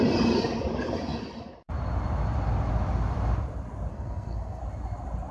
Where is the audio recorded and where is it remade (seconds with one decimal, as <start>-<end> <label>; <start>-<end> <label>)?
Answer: 0.0-3.9 recorded; 3.9-4.6 remade; 4.6-5.3 recorded